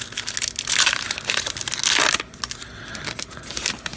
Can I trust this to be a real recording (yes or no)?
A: yes